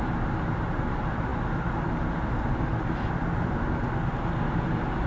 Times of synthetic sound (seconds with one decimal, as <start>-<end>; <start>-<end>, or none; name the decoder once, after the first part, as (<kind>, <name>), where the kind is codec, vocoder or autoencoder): none